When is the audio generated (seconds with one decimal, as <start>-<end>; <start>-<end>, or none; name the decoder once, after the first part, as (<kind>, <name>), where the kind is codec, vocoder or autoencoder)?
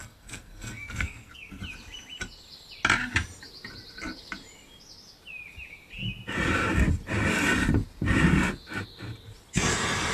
0.0-1.6 (codec, SNAC)